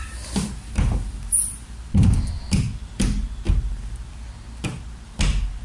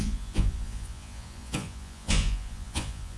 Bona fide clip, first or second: first